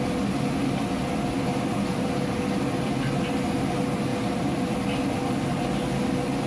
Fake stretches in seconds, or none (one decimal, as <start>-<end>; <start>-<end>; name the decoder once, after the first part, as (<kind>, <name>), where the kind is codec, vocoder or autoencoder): none